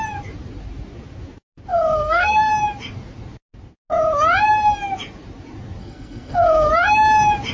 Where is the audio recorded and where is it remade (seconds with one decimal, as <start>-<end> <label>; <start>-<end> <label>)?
0.0-1.7 recorded; 1.7-2.5 remade; 2.5-5.8 recorded; 5.8-6.7 remade; 6.7-7.5 recorded